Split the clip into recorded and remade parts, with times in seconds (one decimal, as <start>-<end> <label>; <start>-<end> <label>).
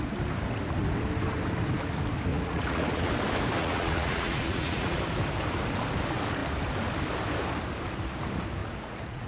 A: 0.0-2.3 recorded; 2.3-3.1 remade; 3.1-3.6 recorded; 3.6-5.0 remade; 5.0-8.6 recorded; 8.6-9.3 remade